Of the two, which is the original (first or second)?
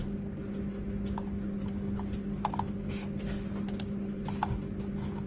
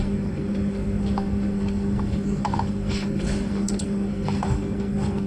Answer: first